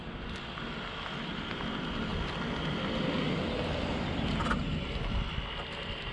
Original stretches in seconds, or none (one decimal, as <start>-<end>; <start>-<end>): 0.0-6.1